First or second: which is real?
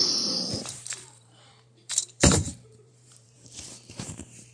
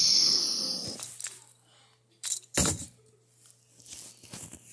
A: second